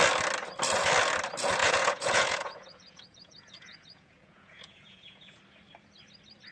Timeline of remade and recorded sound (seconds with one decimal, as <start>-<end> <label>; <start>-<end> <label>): 0.0-1.6 recorded; 1.6-5.4 remade; 5.4-6.5 recorded